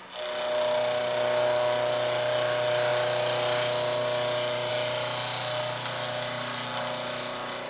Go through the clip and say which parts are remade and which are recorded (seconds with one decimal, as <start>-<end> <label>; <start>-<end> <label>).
0.0-7.7 recorded